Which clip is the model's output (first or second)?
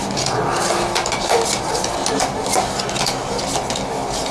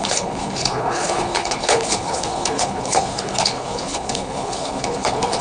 second